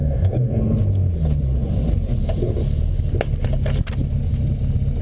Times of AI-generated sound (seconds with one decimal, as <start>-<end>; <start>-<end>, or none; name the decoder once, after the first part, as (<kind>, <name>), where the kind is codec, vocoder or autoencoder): 0.0-0.6 (codec, DAC)